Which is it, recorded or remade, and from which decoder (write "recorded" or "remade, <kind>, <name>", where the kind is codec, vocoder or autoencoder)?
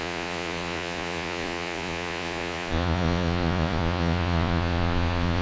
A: remade, vocoder, Vocos